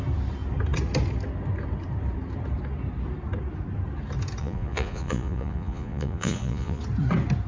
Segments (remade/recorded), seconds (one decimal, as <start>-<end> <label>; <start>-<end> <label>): 0.0-4.4 recorded; 4.4-6.8 remade; 6.8-7.5 recorded